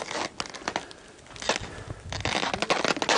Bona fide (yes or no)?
yes